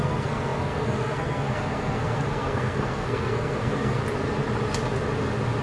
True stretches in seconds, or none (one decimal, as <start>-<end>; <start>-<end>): 4.0-5.6